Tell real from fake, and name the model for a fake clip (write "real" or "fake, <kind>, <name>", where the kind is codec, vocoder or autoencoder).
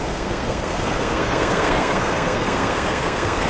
fake, codec, SNAC